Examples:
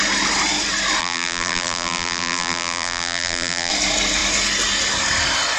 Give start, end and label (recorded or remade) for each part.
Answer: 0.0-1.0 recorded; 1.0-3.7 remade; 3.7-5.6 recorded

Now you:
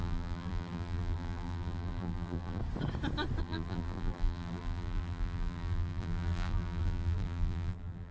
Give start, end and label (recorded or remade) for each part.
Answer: 0.0-2.6 remade; 2.6-3.4 recorded; 3.4-8.1 remade

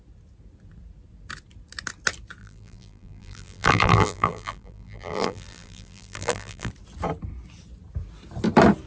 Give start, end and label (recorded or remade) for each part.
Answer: 0.0-2.4 recorded; 2.4-6.7 remade; 6.7-8.9 recorded

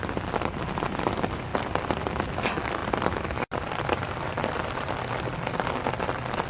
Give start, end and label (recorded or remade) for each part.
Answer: 0.0-2.8 recorded; 2.8-5.1 remade; 5.1-6.5 recorded

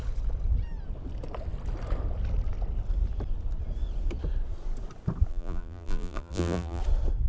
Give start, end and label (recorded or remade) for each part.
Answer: 0.0-5.3 recorded; 5.3-6.8 remade; 6.8-7.3 recorded